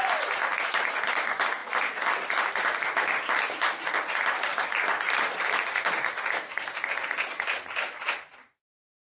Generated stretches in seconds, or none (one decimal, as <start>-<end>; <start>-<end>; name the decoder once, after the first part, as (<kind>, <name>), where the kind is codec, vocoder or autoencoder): none